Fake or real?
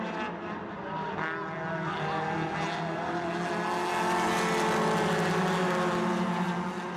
real